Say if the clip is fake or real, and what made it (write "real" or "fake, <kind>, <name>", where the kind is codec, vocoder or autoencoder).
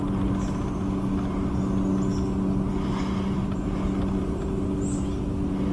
real